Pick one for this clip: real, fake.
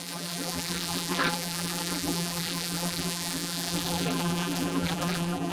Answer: fake